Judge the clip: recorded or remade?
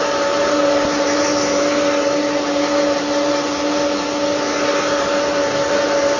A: recorded